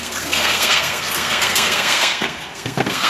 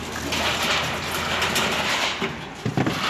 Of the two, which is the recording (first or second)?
second